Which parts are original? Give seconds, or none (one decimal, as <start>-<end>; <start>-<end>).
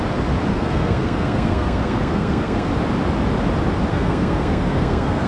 0.0-0.5; 2.7-3.9